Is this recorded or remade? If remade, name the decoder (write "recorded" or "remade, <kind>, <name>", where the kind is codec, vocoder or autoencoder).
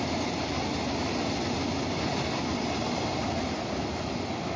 recorded